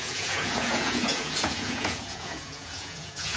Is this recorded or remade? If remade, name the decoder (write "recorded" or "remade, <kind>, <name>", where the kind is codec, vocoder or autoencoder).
remade, vocoder, Vocos